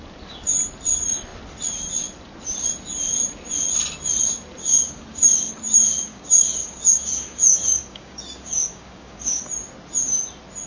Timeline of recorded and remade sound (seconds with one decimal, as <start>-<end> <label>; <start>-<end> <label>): 0.0-4.6 recorded; 4.6-5.5 remade; 5.5-6.1 recorded; 6.1-9.4 remade; 9.4-10.7 recorded